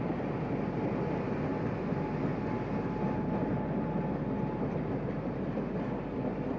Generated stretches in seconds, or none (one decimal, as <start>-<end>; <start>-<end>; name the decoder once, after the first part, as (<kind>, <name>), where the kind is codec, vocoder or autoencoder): none

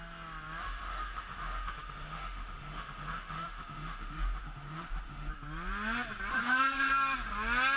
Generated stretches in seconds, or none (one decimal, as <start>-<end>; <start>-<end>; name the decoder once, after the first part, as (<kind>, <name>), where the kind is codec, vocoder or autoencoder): 0.6-5.3 (autoencoder, DAC-VAE); 6.3-6.9

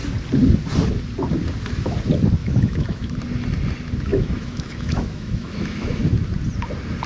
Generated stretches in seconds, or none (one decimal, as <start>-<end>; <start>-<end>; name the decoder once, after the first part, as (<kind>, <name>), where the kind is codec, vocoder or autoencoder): 2.4-3.2 (autoencoder, DAC-VAE); 4.1-6.0